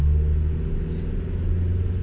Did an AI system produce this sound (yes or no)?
no